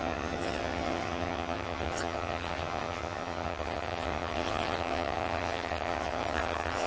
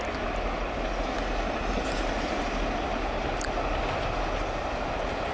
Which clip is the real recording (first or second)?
second